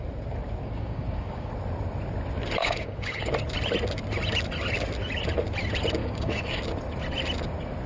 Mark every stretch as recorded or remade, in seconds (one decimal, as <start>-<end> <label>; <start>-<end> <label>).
0.0-0.6 recorded; 0.6-1.5 remade; 1.5-2.6 recorded; 2.6-3.3 remade; 3.3-6.0 recorded; 6.0-6.6 remade; 6.6-7.9 recorded